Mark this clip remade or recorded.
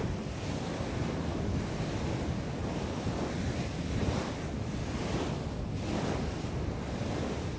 recorded